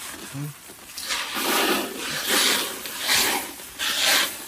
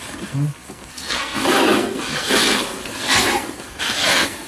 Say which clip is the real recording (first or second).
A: first